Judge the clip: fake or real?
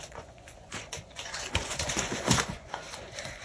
fake